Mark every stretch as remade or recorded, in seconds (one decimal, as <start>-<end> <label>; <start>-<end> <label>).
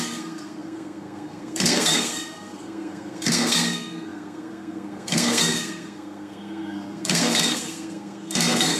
0.0-8.8 remade